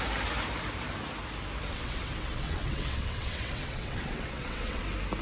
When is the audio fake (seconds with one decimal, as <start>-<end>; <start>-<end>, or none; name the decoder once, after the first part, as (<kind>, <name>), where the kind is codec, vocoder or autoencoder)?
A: 1.7-4.8 (vocoder, WaveNeXt)